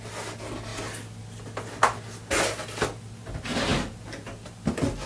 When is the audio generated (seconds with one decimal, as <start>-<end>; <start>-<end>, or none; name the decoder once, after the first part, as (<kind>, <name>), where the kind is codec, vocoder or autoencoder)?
none